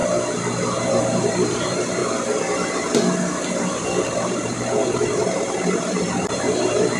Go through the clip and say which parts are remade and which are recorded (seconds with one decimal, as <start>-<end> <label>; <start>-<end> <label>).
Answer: 0.0-0.9 recorded; 0.9-2.0 remade; 2.0-3.6 recorded; 3.6-7.0 remade